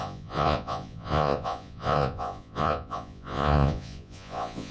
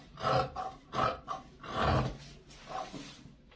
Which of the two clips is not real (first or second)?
first